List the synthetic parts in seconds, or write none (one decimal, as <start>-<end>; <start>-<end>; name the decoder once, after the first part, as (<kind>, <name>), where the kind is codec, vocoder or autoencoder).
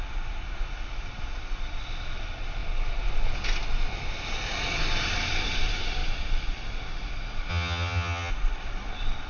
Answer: 7.5-8.3 (vocoder, HiFi-GAN)